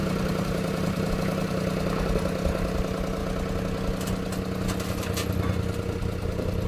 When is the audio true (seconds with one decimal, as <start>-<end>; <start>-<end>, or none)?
1.1-6.7